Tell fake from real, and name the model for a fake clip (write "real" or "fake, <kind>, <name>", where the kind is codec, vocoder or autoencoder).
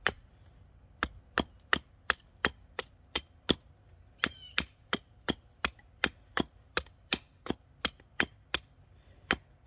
real